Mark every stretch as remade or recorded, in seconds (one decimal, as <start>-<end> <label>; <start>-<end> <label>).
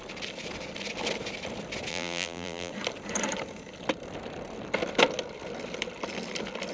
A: 0.0-1.9 recorded; 1.9-2.7 remade; 2.7-6.7 recorded